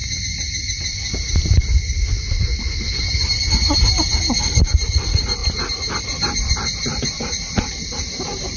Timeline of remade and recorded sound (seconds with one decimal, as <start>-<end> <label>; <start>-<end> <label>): 0.0-4.4 recorded; 4.4-5.4 remade; 5.4-6.8 recorded; 6.8-8.6 remade